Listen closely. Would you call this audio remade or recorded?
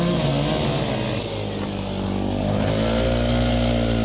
recorded